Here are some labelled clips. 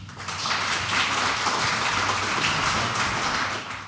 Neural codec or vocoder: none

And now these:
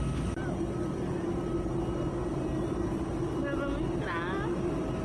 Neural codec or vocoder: none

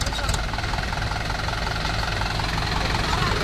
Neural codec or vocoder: none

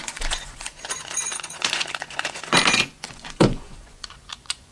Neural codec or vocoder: vocoder, Vocos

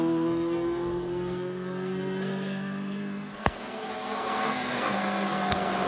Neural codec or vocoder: codec, SNAC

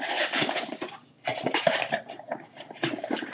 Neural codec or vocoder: none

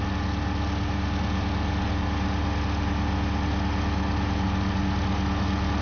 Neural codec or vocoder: none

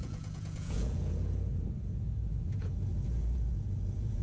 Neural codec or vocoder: vocoder, Vocos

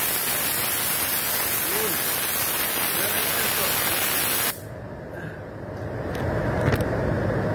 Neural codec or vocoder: none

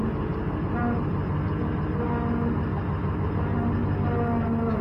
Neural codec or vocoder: none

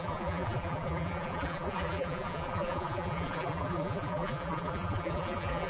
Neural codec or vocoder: vocoder, BigVGAN v2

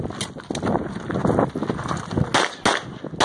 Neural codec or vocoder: none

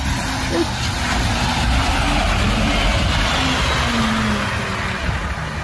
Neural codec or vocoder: none